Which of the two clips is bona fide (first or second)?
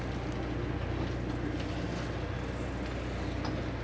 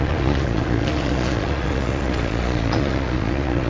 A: first